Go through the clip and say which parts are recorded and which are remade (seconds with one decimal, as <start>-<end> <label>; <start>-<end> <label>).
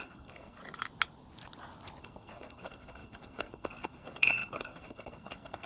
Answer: 0.0-0.6 remade; 0.6-2.0 recorded; 2.0-5.7 remade